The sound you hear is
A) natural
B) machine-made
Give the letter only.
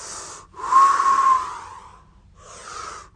A